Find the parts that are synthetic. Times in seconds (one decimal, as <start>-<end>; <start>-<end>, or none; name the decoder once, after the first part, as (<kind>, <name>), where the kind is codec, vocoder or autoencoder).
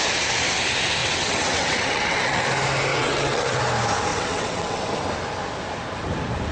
1.0-2.4 (vocoder, WaveNeXt); 2.9-3.6; 4.1-4.8